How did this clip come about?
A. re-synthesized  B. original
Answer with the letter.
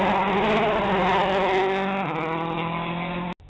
B